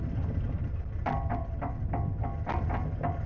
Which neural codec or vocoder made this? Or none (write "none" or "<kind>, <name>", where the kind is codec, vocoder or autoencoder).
none